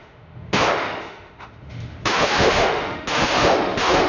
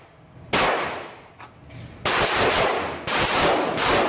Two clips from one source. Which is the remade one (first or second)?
first